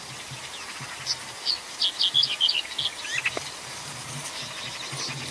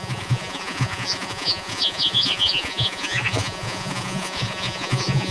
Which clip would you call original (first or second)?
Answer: first